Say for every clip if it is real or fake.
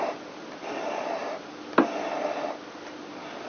real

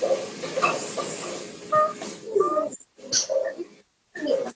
real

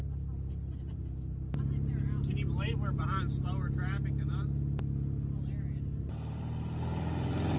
real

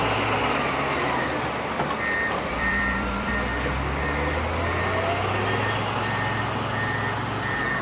fake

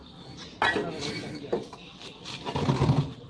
real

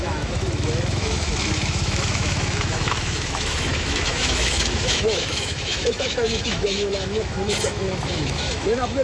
fake